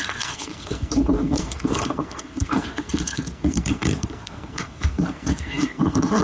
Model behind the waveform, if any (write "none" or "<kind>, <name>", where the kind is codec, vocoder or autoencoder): codec, SNAC